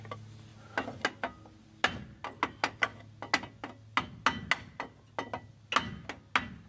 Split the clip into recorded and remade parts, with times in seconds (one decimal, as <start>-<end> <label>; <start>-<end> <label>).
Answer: 0.0-6.7 recorded

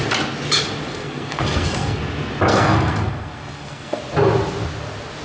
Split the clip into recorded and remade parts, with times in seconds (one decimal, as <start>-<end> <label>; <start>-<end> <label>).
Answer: 0.0-0.9 recorded; 0.9-2.0 remade; 2.0-2.5 recorded; 2.5-4.0 remade; 4.0-5.2 recorded

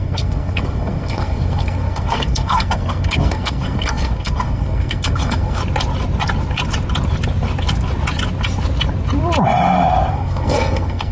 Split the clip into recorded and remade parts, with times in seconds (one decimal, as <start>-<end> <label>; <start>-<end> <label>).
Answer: 0.0-5.6 remade; 5.6-10.1 recorded; 10.1-11.1 remade

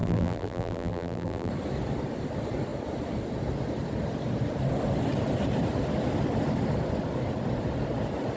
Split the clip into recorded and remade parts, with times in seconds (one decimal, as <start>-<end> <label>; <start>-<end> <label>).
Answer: 0.0-1.5 remade; 1.5-8.4 recorded

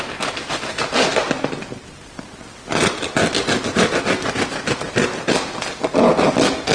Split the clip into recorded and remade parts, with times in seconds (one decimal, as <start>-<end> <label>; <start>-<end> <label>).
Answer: 0.0-6.7 recorded

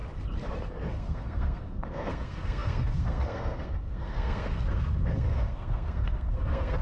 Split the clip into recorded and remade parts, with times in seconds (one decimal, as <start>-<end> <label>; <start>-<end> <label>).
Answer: 0.0-0.9 recorded; 0.9-6.8 remade